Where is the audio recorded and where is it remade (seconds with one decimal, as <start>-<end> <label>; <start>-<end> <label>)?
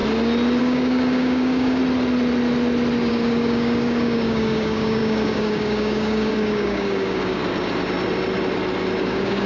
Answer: 0.0-0.6 recorded; 0.6-1.8 remade; 1.8-3.1 recorded; 3.1-7.4 remade; 7.4-9.0 recorded; 9.0-9.5 remade